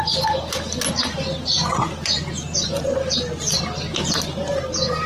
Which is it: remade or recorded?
recorded